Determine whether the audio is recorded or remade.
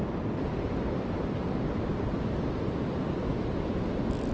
recorded